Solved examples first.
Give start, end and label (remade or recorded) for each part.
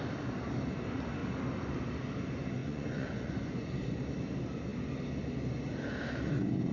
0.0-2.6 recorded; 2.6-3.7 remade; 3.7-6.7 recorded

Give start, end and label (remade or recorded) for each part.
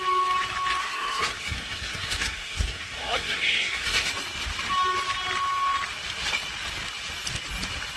0.0-0.8 recorded; 0.8-4.1 remade; 4.1-8.0 recorded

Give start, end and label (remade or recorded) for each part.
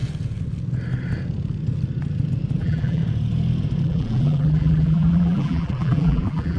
0.0-2.6 recorded; 2.6-3.0 remade; 3.0-3.8 recorded; 3.8-6.6 remade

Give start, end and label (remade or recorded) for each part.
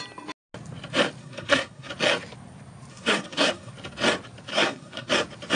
0.0-1.2 recorded; 1.2-1.9 remade; 1.9-2.9 recorded; 2.9-3.7 remade; 3.7-4.5 recorded; 4.5-5.1 remade; 5.1-5.5 recorded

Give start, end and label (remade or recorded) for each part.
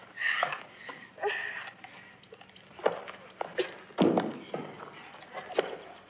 0.0-1.1 remade; 1.1-6.1 recorded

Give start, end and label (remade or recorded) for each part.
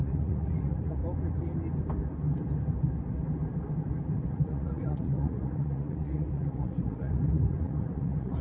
0.0-1.0 remade; 1.0-4.3 recorded; 4.3-8.4 remade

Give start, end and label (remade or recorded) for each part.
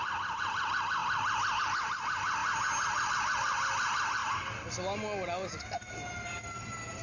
0.0-7.0 recorded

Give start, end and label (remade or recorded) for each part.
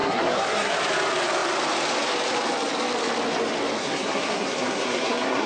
0.0-0.7 remade; 0.7-3.8 recorded; 3.8-5.5 remade